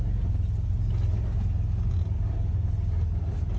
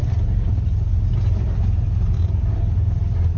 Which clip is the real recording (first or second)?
first